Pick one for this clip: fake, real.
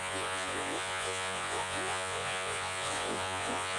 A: fake